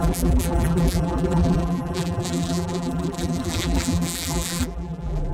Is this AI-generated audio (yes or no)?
yes